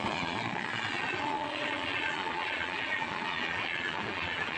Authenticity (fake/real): fake